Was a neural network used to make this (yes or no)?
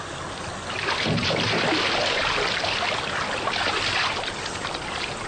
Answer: no